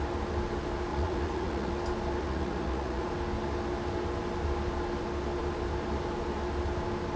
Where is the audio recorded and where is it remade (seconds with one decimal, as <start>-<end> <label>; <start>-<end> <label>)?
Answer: 0.0-0.9 recorded; 0.9-1.7 remade; 1.7-2.2 recorded; 2.2-3.1 remade; 3.1-7.2 recorded